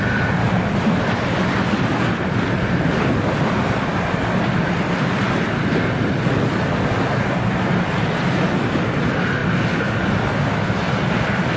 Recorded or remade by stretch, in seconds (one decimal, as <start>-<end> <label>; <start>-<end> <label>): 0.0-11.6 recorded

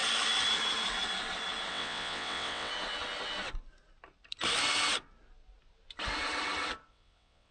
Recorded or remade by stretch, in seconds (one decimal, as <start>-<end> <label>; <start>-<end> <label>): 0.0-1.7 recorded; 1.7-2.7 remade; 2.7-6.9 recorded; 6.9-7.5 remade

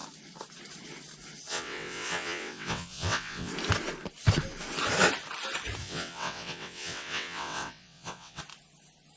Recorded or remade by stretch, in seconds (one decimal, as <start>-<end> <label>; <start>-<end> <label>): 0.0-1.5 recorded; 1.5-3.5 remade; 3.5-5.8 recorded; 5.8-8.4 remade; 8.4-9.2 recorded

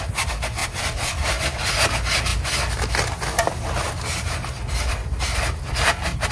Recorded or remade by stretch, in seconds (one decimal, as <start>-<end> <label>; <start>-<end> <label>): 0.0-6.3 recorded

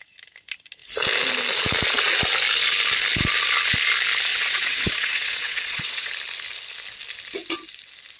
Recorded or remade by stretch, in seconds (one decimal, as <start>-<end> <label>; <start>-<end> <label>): 0.0-4.3 recorded; 4.3-6.1 remade; 6.1-8.2 recorded

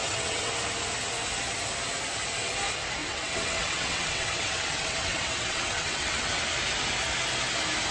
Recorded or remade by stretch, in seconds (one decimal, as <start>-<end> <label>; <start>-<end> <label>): 0.0-0.5 remade; 0.5-3.0 recorded; 3.0-6.4 remade; 6.4-7.9 recorded